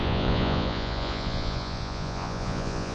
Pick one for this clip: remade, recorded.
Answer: remade